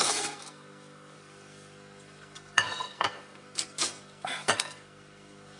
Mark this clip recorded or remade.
remade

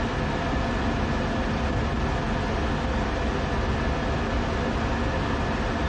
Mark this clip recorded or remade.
recorded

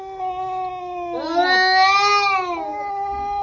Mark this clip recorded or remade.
recorded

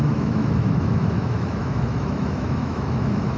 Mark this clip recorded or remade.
remade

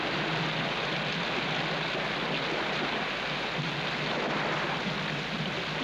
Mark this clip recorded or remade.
recorded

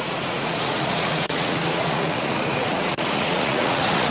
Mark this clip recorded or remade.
remade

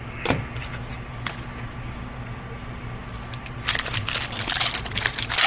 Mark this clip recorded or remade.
recorded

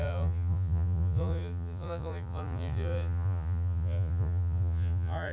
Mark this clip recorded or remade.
remade